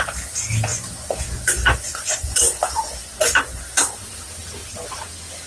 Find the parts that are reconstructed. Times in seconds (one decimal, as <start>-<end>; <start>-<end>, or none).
0.7-3.8